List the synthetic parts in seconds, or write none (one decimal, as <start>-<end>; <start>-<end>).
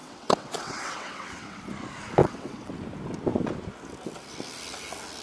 0.0-1.7; 2.2-2.7